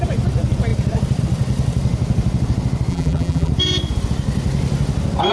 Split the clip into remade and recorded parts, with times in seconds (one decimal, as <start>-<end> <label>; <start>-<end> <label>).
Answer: 0.0-2.9 recorded; 2.9-3.5 remade; 3.5-5.3 recorded